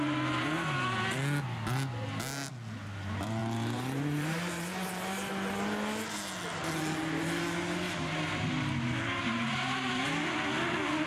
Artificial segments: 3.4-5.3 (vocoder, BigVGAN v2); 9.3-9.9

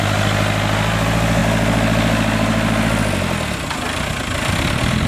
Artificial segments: none

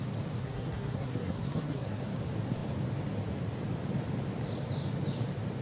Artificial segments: 0.4-2.0 (codec, SNAC)

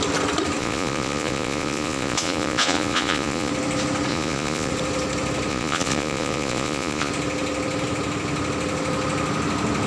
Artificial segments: 0.6-3.5 (vocoder, Vocos); 4.1-4.7; 5.5-7.1

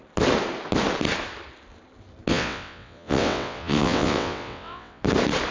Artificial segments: 2.3-5.0 (vocoder, WaveNeXt)

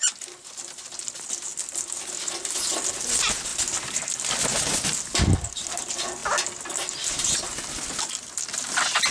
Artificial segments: none